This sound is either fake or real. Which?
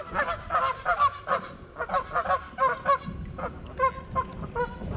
real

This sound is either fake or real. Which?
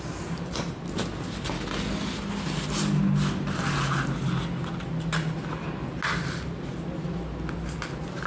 real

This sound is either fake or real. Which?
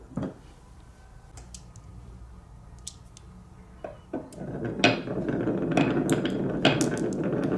real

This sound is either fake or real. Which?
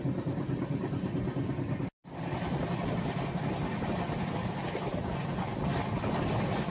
real